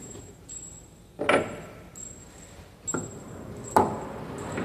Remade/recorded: recorded